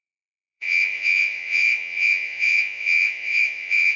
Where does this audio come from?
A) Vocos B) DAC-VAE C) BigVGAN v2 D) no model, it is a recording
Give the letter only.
A